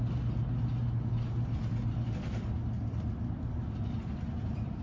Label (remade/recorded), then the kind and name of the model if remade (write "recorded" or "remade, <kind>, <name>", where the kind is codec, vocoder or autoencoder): recorded